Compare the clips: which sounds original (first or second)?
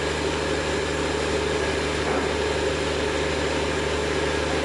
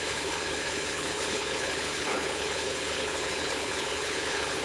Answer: first